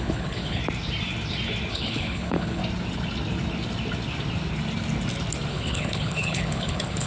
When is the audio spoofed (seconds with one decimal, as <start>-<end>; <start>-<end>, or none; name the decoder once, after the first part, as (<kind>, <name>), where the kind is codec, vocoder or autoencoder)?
0.0-0.6 (codec, HILCodec); 1.7-2.6; 5.5-7.1